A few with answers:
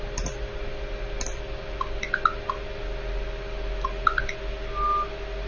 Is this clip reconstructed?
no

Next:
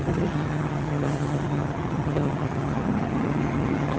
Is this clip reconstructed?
yes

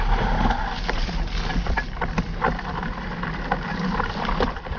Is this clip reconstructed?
no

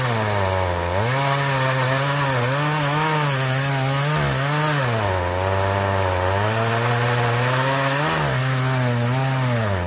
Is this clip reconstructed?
no